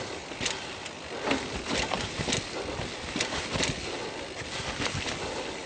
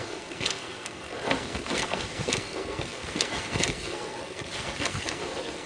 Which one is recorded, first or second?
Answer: first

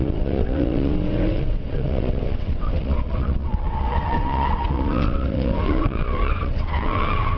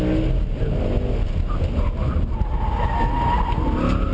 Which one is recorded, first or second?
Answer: second